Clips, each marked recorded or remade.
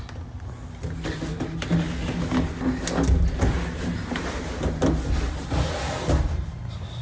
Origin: recorded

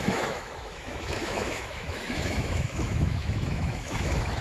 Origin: remade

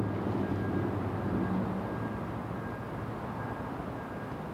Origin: recorded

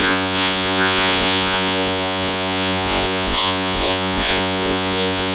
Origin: remade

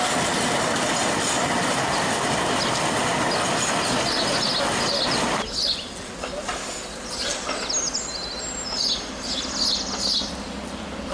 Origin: recorded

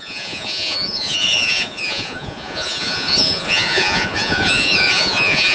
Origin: remade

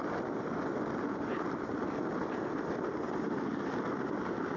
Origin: recorded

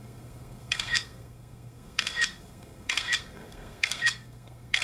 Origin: remade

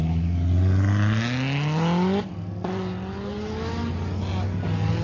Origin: recorded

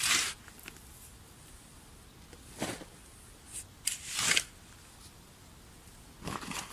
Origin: recorded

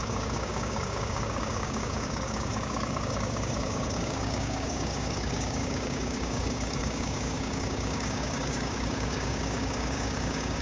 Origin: remade